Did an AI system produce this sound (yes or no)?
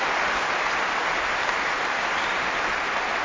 no